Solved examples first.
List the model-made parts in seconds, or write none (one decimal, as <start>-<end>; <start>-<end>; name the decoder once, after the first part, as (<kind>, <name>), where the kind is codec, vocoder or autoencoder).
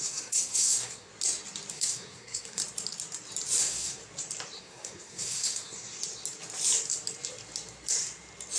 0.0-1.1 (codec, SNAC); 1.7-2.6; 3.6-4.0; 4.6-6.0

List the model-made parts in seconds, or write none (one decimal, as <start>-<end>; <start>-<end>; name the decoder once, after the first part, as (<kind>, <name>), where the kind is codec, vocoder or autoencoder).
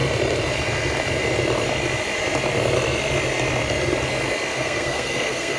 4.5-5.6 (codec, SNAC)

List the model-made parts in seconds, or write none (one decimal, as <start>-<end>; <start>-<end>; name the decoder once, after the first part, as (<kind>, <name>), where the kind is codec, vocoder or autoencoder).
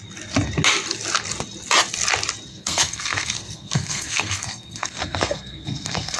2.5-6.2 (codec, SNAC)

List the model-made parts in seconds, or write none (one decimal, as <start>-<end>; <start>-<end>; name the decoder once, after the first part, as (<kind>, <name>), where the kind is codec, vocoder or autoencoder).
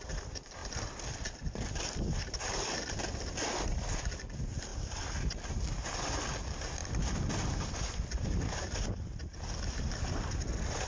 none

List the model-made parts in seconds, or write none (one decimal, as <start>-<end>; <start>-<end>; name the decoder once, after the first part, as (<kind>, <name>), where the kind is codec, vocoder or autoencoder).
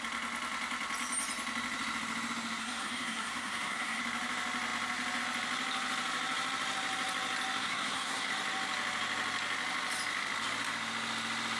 2.6-4.0 (codec, SNAC); 7.6-8.3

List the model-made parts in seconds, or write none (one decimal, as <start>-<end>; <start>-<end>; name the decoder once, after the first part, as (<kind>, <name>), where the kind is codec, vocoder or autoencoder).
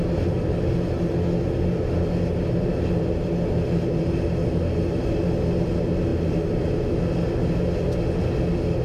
none